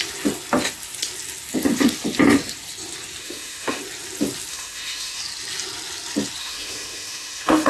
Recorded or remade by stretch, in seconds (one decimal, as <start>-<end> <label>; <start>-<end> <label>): 0.0-3.2 recorded; 3.2-3.8 remade; 3.8-4.5 recorded; 4.5-5.2 remade; 5.2-6.4 recorded; 6.4-7.7 remade